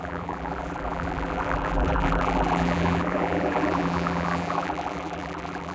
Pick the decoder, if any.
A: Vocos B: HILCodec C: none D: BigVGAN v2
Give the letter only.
D